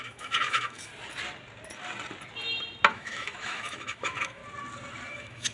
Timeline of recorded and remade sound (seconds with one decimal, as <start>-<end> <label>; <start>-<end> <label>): 0.0-0.9 remade; 0.9-2.9 recorded; 2.9-4.4 remade; 4.4-5.1 recorded; 5.1-5.5 remade